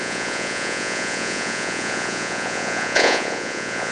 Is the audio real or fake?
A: fake